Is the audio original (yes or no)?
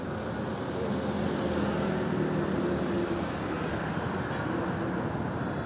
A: yes